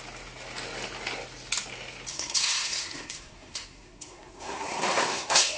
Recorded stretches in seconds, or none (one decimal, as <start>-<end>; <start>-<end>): 0.0-2.1

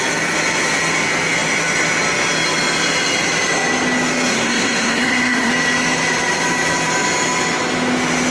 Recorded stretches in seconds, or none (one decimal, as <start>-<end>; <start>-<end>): 0.0-4.3; 5.5-8.3

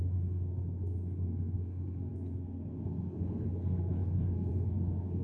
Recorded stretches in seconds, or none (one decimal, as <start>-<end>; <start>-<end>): none

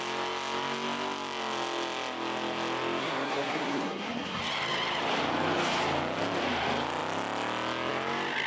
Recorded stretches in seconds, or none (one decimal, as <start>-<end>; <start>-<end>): 0.0-3.0; 4.4-8.5

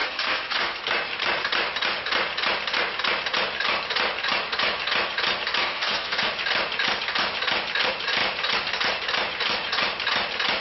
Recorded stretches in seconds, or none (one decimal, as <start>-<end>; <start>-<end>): 0.8-5.6; 6.3-10.6

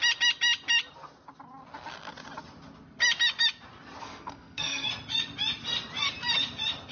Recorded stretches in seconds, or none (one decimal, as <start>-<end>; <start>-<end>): 0.0-4.0; 4.9-6.9

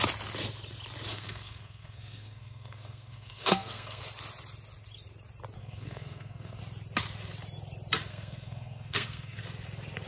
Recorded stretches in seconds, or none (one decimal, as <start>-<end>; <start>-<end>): 0.0-1.1; 4.0-5.6; 6.6-8.1; 9.4-10.1